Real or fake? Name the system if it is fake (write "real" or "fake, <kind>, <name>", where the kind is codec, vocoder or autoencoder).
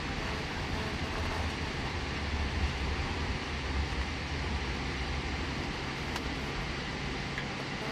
real